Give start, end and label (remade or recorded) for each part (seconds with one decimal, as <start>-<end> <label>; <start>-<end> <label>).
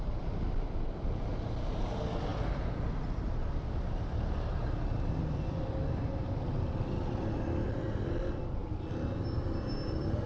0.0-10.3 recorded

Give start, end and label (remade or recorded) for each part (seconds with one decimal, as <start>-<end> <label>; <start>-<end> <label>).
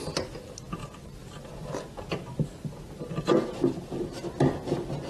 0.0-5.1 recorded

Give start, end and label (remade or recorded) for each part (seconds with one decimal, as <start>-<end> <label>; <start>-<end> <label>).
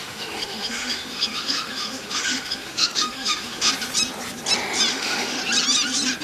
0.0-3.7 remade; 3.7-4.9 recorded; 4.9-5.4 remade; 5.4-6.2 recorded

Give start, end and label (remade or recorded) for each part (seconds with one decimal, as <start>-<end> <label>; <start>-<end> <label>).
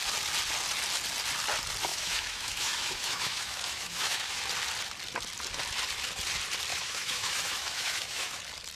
0.0-1.9 recorded; 1.9-4.4 remade; 4.4-6.7 recorded; 6.7-8.4 remade; 8.4-8.8 recorded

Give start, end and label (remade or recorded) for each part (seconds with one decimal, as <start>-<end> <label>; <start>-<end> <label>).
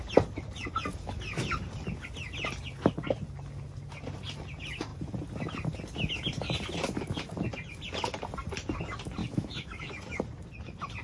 0.0-9.2 recorded; 9.2-9.9 remade; 9.9-11.0 recorded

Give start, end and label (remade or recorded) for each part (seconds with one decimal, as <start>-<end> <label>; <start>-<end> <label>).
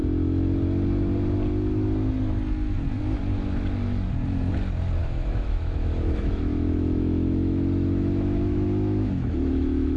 0.0-5.0 recorded; 5.0-10.0 remade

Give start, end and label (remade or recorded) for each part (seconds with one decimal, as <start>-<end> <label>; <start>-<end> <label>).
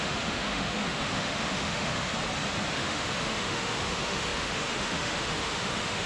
0.0-2.1 remade; 2.1-2.7 recorded; 2.7-6.1 remade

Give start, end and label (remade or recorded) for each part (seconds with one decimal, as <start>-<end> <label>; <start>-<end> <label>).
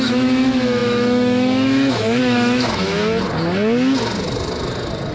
0.0-3.0 remade; 3.0-5.1 recorded